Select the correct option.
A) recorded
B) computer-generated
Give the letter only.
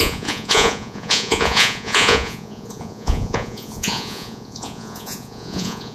B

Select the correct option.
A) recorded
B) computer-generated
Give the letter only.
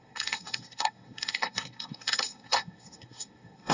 B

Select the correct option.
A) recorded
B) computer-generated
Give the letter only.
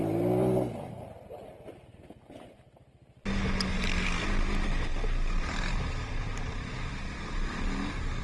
A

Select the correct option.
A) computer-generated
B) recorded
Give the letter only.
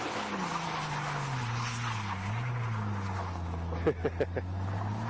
B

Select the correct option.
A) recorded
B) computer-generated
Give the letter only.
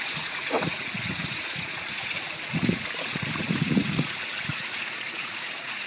B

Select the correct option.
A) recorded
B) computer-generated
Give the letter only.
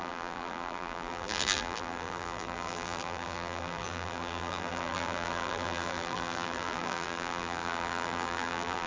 B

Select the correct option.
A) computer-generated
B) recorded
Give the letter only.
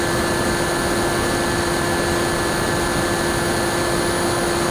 B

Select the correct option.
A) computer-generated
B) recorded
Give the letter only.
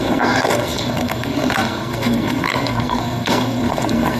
A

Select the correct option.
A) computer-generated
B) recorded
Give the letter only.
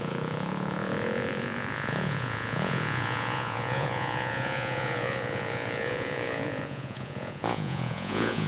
A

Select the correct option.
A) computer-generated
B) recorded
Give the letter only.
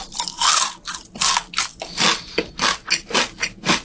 B